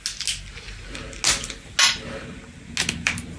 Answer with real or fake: real